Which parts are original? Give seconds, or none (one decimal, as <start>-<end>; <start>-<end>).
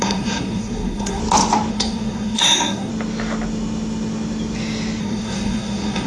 1.2-1.7; 2.9-5.0